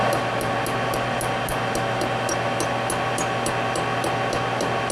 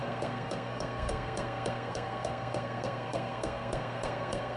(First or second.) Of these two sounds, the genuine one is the first